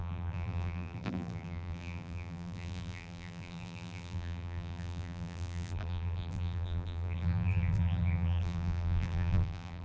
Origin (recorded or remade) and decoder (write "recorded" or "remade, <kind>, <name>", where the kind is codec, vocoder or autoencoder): remade, vocoder, BigVGAN v2